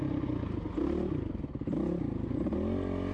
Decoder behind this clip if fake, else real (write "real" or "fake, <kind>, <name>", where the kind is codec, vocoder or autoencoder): real